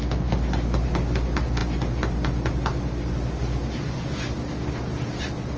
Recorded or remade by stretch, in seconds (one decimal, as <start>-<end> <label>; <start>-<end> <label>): 0.0-5.6 recorded